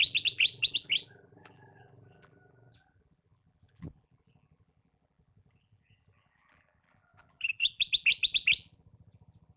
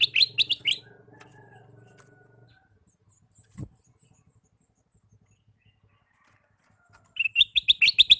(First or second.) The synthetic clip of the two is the first